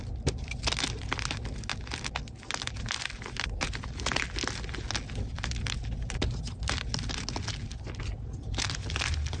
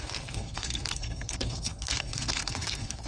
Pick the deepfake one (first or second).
second